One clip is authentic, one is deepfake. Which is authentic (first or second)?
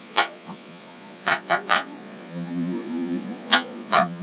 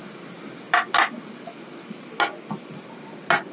second